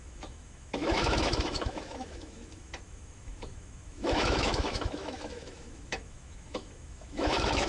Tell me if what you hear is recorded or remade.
remade